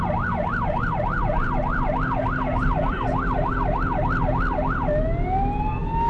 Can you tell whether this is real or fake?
real